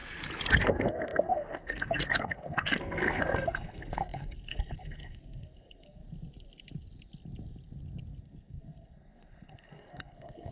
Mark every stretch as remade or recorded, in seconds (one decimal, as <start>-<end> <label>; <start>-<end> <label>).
0.0-0.6 recorded; 0.6-6.0 remade; 6.0-8.2 recorded; 8.2-10.5 remade